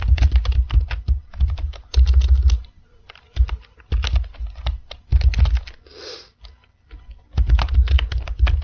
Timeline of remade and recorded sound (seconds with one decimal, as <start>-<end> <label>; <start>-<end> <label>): 0.0-8.6 recorded